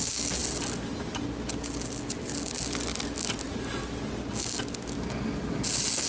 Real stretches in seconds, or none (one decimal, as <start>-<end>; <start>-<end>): 0.0-6.1

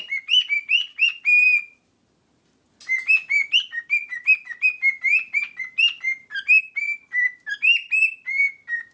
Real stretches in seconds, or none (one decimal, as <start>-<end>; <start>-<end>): 0.0-8.9

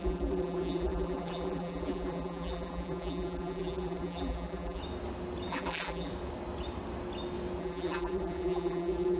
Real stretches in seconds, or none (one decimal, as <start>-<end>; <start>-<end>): 4.8-5.5; 6.1-7.6